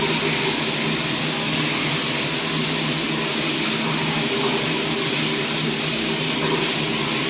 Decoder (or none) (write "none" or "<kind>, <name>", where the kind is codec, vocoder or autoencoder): none